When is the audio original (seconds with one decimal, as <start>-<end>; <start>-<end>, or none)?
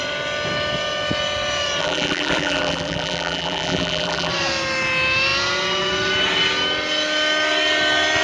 0.0-1.8; 4.3-8.2